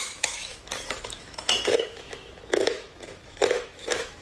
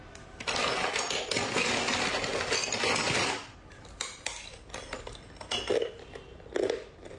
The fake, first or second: first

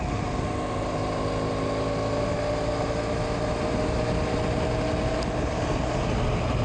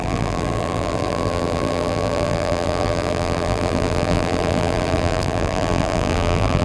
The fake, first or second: second